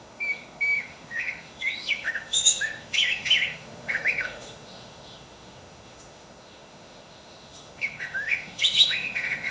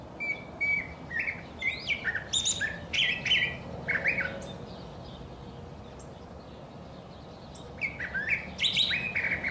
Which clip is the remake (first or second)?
first